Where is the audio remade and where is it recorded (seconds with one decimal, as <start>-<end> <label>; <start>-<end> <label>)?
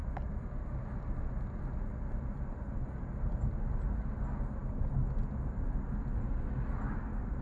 0.0-7.4 recorded